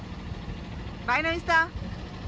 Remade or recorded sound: recorded